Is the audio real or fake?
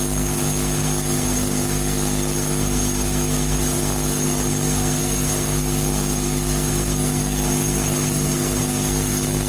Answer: fake